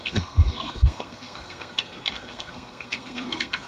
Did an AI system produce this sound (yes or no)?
yes